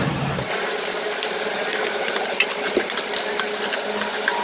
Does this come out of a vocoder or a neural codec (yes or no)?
no